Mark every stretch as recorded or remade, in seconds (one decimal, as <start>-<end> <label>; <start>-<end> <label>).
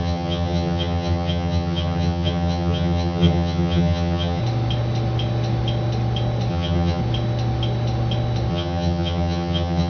0.0-4.4 remade; 4.4-6.5 recorded; 6.5-7.0 remade; 7.0-8.5 recorded; 8.5-9.9 remade